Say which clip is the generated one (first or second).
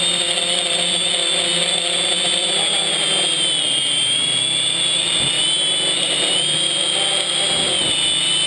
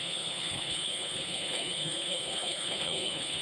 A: second